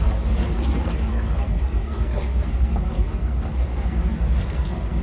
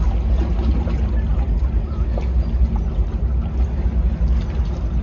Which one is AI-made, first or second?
first